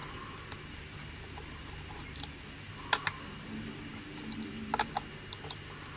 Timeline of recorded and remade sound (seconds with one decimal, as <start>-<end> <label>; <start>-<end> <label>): 0.0-6.0 recorded

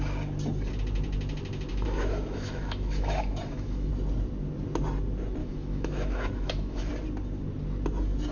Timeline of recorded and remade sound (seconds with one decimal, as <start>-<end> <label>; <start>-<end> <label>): 0.0-1.7 recorded; 1.7-3.9 remade; 3.9-5.4 recorded; 5.4-6.9 remade; 6.9-8.3 recorded

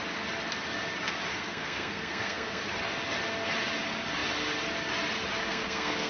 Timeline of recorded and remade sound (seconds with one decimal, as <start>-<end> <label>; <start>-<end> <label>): 0.0-1.3 recorded; 1.3-2.6 remade; 2.6-5.5 recorded; 5.5-6.1 remade

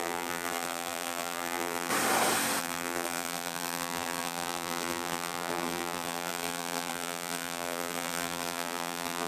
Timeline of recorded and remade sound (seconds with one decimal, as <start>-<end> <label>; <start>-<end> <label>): 0.0-1.9 remade; 1.9-2.6 recorded; 2.6-9.3 remade

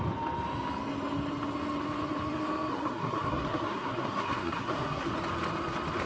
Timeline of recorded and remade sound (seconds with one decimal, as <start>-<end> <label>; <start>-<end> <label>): 0.0-2.7 recorded; 2.7-5.1 remade; 5.1-6.1 recorded

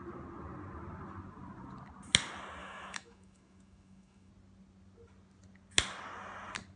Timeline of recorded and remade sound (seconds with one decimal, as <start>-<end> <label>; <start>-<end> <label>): 0.0-2.6 recorded; 2.6-4.3 remade; 4.3-6.8 recorded